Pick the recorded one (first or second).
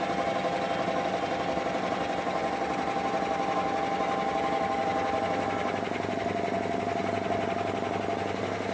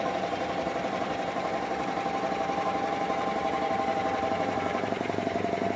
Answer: first